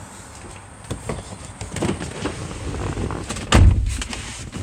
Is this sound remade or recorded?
recorded